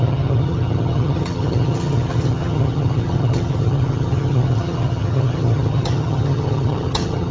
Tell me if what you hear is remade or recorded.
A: remade